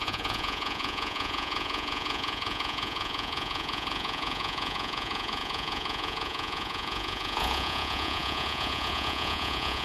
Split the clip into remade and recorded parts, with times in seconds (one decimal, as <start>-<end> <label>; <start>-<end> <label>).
0.0-9.8 remade